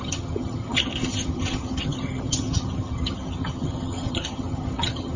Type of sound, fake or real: fake